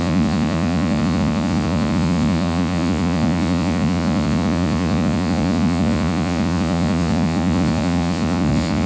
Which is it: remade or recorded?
remade